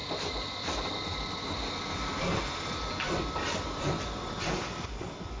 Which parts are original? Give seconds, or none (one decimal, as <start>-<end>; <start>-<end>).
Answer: 0.0-5.4